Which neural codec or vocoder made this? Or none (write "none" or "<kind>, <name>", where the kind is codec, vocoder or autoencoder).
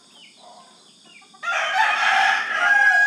none